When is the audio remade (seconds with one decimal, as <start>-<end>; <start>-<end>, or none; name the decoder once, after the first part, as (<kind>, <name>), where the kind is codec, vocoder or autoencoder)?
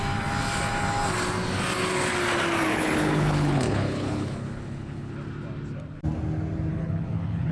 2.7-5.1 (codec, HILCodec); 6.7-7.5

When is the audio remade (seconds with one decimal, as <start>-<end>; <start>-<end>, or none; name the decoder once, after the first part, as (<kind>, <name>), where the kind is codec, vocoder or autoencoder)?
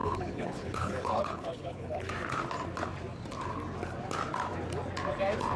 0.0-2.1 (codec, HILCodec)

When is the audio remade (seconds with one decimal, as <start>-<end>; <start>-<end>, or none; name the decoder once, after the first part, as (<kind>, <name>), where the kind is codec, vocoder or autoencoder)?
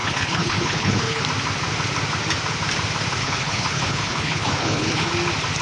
0.0-1.2 (codec, HILCodec); 3.2-5.1